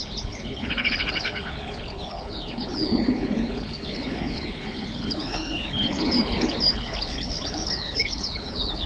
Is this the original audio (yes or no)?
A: no